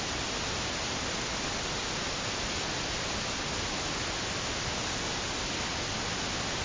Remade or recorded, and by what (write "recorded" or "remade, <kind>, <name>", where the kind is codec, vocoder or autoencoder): recorded